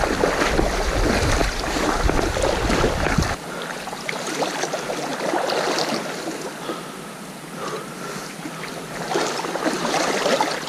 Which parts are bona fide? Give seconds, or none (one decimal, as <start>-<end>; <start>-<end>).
0.0-1.4; 3.3-5.1; 6.2-10.7